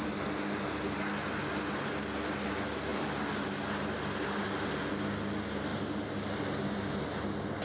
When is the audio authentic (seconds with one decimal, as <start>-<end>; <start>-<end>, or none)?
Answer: 0.0-7.6

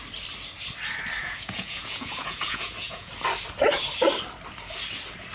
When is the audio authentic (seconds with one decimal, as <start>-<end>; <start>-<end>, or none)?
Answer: 0.0-1.2; 3.1-5.3

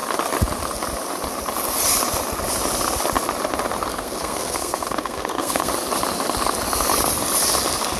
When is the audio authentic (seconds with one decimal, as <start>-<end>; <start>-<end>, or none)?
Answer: 0.0-3.9; 5.7-8.0

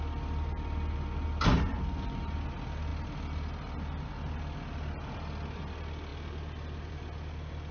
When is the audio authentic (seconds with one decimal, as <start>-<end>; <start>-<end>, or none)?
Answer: 0.0-7.7

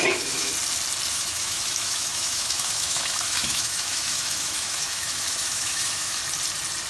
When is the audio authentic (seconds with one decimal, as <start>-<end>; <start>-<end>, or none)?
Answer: 0.5-1.1; 6.2-6.9

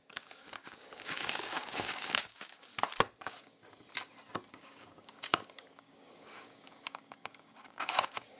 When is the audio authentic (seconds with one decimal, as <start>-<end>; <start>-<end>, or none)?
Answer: 2.7-3.2; 3.6-4.5

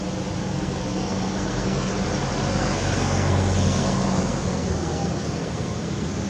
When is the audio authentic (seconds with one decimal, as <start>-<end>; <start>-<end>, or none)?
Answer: 0.0-0.4; 1.9-2.5

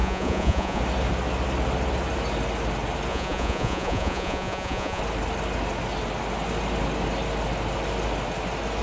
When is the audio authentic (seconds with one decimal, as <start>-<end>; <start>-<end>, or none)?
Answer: 0.8-3.1; 5.0-8.8